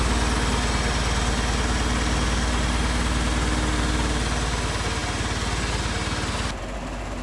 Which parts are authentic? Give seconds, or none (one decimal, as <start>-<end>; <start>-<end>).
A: 0.0-7.2